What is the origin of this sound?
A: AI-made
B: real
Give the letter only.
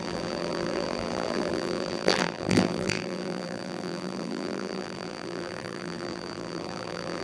A